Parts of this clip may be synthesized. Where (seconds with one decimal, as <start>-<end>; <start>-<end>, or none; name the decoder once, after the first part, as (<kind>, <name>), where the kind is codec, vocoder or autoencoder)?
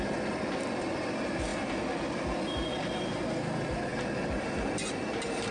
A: none